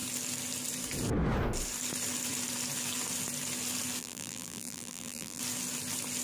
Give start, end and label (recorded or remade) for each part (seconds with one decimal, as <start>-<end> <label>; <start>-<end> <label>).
0.0-4.0 recorded; 4.0-5.4 remade; 5.4-6.2 recorded